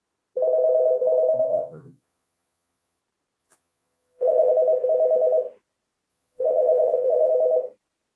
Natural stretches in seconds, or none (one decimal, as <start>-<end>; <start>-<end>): 0.0-1.5; 3.0-3.4; 4.5-6.1; 7.3-8.2